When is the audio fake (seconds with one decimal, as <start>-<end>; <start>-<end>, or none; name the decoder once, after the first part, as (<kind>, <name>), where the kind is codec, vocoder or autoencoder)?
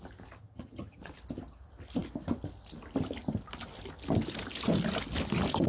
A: 0.4-1.0 (vocoder, HiFi-GAN)